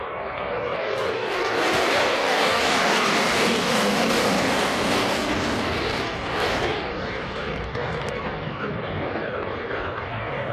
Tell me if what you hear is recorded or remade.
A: remade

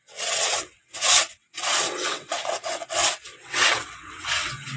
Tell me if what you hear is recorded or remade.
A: remade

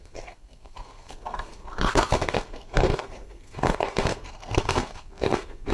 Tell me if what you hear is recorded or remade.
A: remade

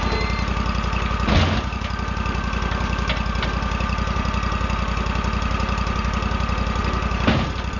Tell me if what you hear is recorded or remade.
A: recorded